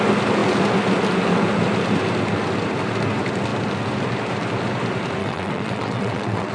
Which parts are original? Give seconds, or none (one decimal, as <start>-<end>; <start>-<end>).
0.0-5.2